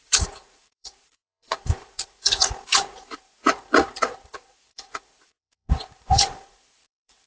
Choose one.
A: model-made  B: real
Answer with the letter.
A